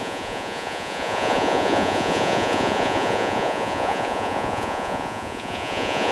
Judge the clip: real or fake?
fake